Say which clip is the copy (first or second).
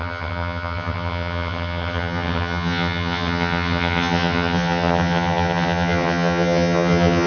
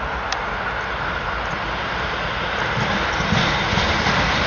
first